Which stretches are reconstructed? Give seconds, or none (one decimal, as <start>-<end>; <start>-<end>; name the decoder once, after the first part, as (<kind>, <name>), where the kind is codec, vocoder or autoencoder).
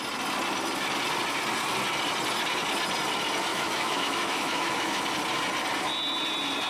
3.5-5.0 (autoencoder, DAC-VAE)